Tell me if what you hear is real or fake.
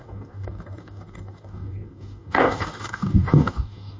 fake